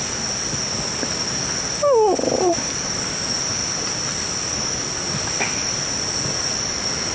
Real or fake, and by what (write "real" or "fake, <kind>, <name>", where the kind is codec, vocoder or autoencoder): real